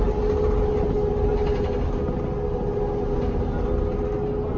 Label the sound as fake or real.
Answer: real